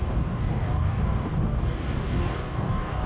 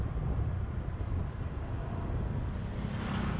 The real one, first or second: second